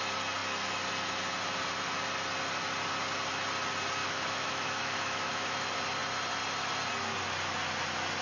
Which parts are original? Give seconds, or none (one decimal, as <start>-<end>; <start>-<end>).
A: 0.0-4.0; 5.6-8.2